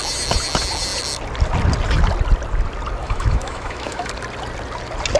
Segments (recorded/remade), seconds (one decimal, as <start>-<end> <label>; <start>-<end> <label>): 0.0-3.0 recorded; 3.0-4.1 remade; 4.1-5.2 recorded